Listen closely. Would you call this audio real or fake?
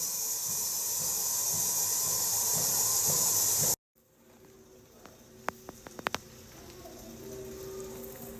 real